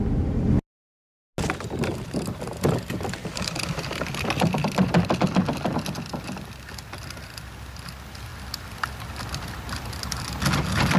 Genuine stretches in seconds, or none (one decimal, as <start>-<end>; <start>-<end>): 0.0-3.2; 6.4-8.3; 10.2-11.0